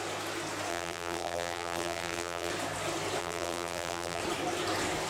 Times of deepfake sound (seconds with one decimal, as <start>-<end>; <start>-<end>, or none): 0.7-2.5; 3.2-4.2